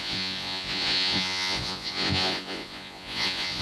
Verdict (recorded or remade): remade